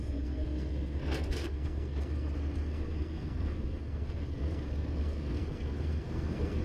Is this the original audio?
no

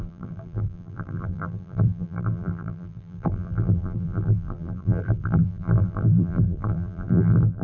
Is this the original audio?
no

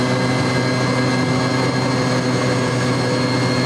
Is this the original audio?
yes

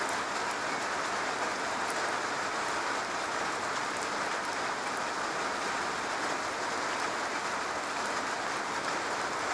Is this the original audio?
yes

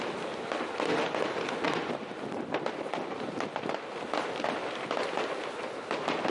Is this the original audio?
yes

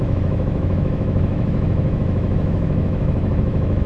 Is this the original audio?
no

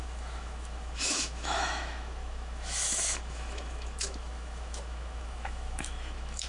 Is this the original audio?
no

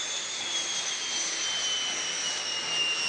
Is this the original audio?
yes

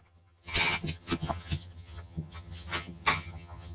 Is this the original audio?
no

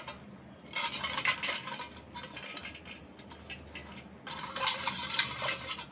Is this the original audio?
yes